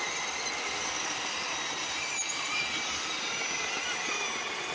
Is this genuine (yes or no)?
yes